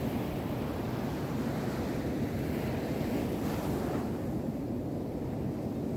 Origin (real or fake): real